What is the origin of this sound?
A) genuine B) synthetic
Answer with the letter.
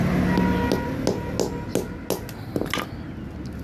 A